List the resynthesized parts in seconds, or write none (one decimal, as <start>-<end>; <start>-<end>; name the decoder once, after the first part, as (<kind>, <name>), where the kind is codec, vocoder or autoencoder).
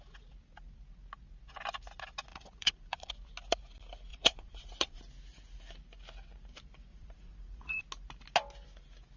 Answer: 2.3-3.1 (vocoder, Vocos); 4.1-5.0; 6.9-7.8